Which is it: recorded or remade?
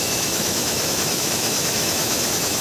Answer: remade